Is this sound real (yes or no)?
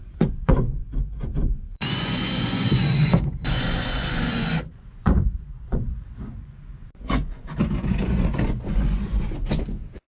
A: no